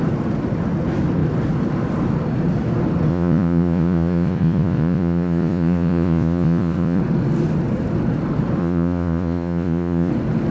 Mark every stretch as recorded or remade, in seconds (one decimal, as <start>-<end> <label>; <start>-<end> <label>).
0.0-3.1 recorded; 3.1-7.0 remade; 7.0-8.6 recorded; 8.6-10.1 remade; 10.1-10.5 recorded